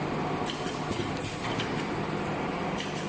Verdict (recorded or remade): recorded